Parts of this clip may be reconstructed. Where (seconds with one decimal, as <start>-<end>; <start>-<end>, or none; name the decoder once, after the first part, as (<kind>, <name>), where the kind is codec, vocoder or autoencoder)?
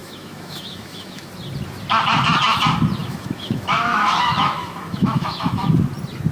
0.0-1.3 (autoencoder, DAC-VAE); 3.0-5.7